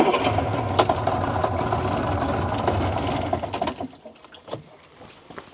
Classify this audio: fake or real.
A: real